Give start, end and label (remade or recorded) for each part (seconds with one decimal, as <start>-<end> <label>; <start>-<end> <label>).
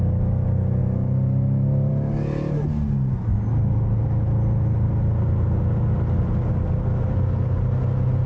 0.0-8.3 recorded